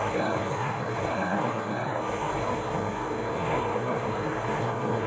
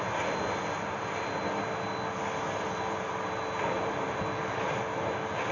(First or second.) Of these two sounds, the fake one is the first